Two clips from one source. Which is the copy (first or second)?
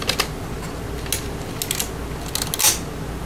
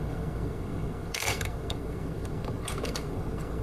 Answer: second